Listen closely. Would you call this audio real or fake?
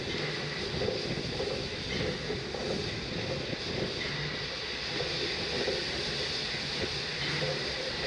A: real